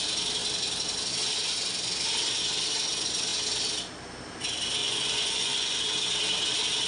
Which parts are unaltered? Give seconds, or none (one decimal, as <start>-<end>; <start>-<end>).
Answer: 0.0-4.8; 5.8-6.9